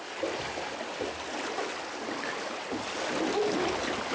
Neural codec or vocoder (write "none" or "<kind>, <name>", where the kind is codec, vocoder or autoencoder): none